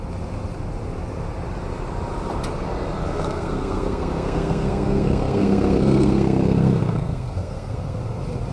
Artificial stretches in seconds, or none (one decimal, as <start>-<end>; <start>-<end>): 3.1-8.0